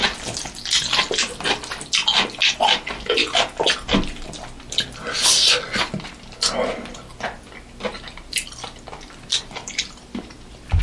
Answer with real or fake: real